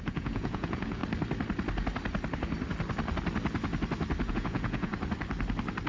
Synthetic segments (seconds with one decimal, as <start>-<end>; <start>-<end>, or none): 0.0-1.0; 4.3-4.9